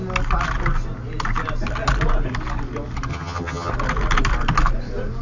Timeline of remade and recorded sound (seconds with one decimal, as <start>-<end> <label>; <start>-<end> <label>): 0.0-3.1 recorded; 3.1-3.7 remade; 3.7-5.2 recorded